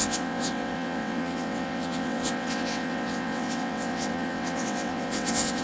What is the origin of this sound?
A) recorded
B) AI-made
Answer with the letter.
B